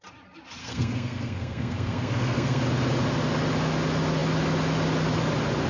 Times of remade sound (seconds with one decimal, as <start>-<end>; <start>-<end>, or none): 0.6-2.6